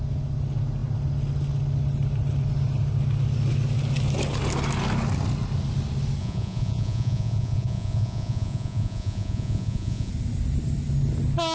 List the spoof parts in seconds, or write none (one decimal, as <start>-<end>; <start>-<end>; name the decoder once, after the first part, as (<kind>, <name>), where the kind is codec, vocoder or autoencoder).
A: 6.2-10.1 (vocoder, Vocos)